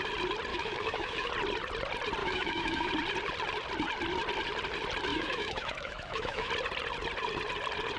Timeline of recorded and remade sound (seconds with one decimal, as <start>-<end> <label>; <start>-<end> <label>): 0.0-0.5 recorded; 0.5-1.3 remade; 1.3-2.2 recorded; 2.2-2.9 remade; 2.9-5.1 recorded; 5.1-6.5 remade; 6.5-8.0 recorded